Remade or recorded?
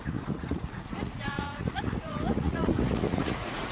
remade